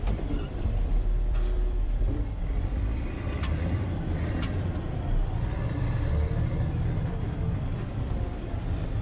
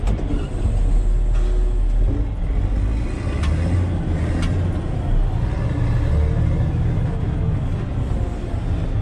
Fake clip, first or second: first